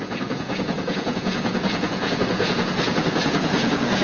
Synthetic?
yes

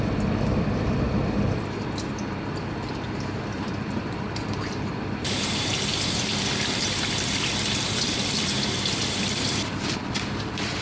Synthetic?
yes